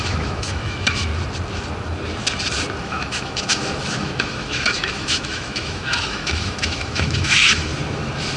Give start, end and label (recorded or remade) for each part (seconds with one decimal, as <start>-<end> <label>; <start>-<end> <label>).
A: 0.0-1.1 remade; 1.1-2.8 recorded; 2.8-7.7 remade; 7.7-8.4 recorded